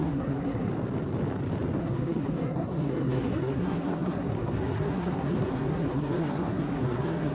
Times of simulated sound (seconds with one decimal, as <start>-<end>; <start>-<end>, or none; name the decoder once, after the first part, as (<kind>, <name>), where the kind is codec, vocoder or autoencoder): 0.0-0.7 (codec, SNAC); 1.8-7.3